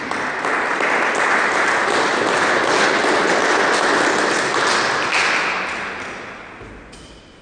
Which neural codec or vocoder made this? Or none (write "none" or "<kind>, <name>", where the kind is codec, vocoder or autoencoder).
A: none